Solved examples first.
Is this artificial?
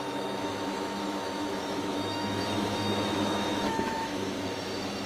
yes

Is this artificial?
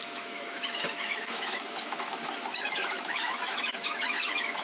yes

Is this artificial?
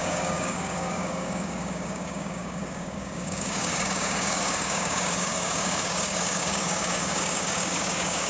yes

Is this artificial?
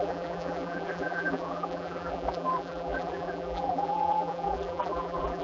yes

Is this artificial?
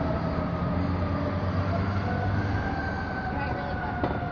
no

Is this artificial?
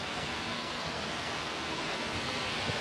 yes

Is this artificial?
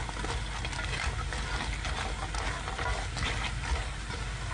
no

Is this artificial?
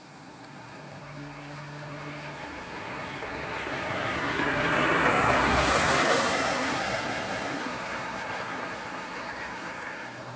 yes